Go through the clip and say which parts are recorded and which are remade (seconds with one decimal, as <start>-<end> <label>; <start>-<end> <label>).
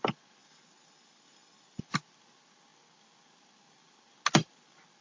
0.0-0.4 recorded; 0.4-1.8 remade; 1.8-5.0 recorded